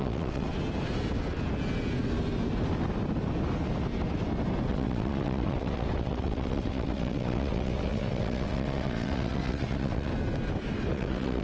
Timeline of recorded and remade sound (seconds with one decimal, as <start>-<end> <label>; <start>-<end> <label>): 0.0-0.5 remade; 0.5-4.7 recorded; 4.7-10.1 remade; 10.1-10.9 recorded; 10.9-11.4 remade